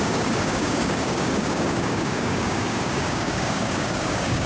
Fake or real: fake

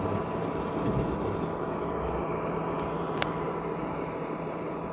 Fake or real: fake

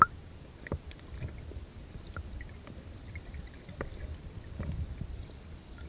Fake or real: real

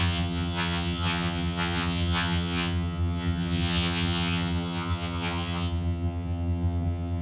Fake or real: fake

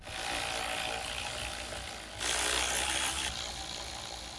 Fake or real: real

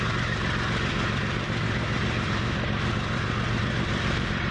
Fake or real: fake